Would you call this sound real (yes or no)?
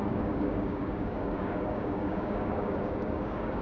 no